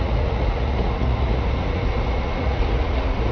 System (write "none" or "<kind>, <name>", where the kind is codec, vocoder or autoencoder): vocoder, Vocos